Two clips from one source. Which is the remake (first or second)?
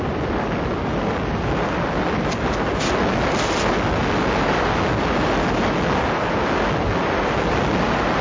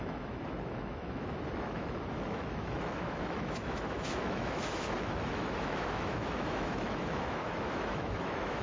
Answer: second